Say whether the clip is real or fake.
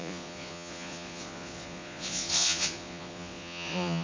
fake